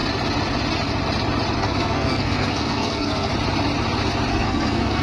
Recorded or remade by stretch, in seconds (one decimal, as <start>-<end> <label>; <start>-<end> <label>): 0.0-1.6 recorded; 1.6-3.3 remade; 3.3-4.3 recorded; 4.3-5.0 remade